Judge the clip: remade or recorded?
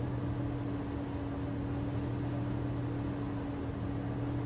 recorded